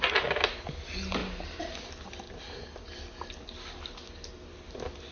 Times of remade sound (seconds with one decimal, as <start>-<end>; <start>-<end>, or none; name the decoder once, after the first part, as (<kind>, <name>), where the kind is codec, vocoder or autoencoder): none